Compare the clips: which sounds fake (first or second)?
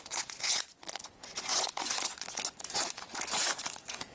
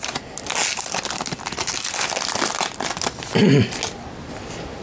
first